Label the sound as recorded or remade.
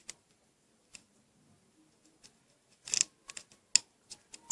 recorded